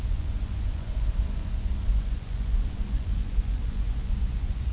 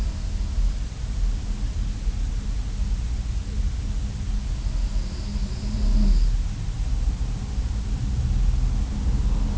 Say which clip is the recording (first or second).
second